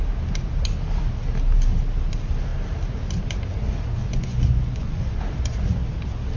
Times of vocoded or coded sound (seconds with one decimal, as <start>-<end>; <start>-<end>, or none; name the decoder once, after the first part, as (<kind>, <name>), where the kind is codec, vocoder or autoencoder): 4.0-5.2 (vocoder, Vocos)